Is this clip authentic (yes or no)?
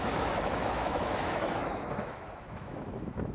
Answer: no